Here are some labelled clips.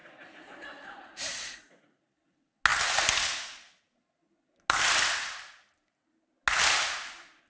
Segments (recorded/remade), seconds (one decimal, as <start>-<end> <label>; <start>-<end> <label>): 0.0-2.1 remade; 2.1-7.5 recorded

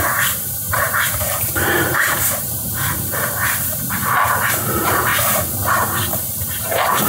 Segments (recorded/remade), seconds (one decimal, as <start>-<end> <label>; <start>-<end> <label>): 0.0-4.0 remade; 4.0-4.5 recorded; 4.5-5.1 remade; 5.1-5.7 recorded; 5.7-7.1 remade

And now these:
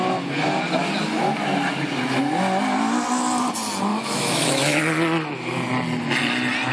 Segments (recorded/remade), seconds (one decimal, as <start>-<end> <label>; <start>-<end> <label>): 0.0-3.9 recorded; 3.9-4.8 remade; 4.8-6.7 recorded